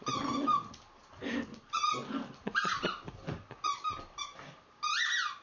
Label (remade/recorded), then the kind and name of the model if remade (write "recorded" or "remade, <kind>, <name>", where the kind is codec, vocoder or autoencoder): recorded